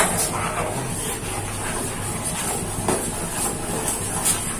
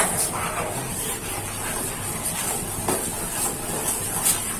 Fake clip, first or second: second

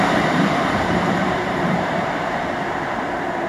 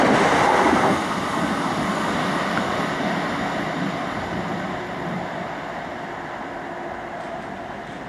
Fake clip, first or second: first